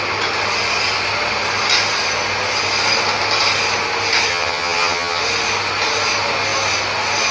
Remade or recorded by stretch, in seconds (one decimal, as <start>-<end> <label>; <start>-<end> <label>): 0.0-4.3 recorded; 4.3-5.2 remade; 5.2-7.3 recorded